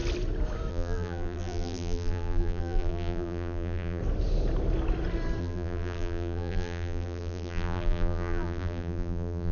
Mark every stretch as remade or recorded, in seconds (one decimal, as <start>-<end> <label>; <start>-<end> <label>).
0.0-0.7 recorded; 0.7-4.0 remade; 4.0-5.4 recorded; 5.4-9.5 remade